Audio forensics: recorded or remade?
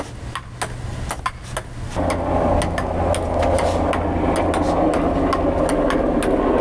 recorded